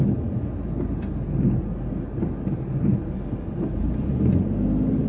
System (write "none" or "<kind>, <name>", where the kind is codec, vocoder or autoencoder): none